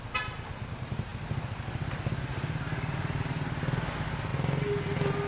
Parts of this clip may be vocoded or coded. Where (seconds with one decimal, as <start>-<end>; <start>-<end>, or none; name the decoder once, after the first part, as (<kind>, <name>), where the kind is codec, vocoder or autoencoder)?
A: none